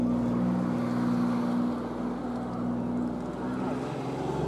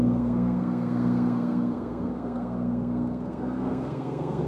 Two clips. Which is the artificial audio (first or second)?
second